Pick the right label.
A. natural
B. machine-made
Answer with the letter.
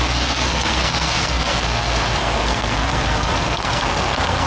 B